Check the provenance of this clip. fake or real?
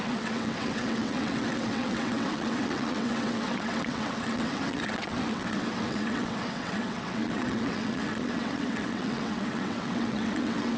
fake